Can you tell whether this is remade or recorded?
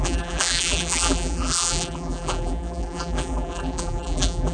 remade